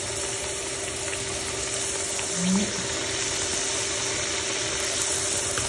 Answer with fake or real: real